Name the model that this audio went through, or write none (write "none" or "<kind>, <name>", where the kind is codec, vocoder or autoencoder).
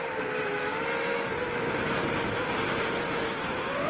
none